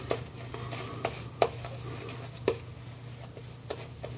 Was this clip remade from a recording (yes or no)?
no